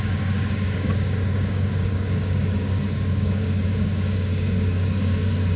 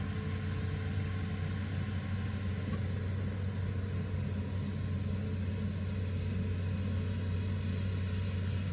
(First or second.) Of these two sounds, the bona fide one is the second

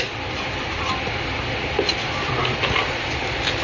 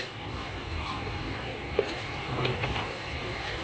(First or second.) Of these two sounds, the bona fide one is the first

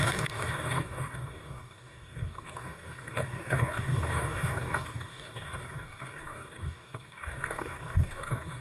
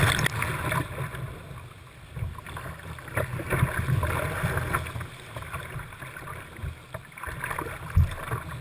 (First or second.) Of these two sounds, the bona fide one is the second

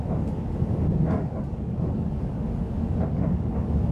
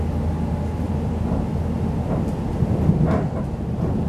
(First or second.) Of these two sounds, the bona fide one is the second